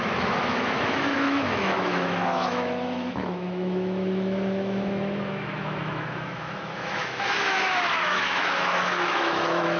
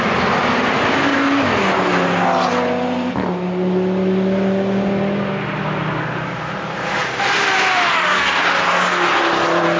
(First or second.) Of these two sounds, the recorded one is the second